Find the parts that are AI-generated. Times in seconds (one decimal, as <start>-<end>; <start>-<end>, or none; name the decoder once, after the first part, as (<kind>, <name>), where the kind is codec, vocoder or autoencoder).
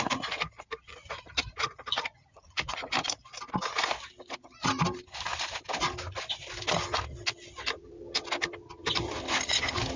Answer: 0.9-2.9 (vocoder, Vocos)